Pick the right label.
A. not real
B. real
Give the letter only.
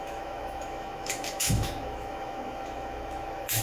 A